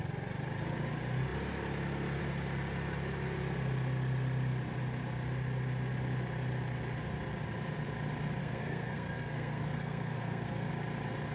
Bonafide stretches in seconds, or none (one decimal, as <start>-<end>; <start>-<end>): 0.0-8.4; 10.7-11.3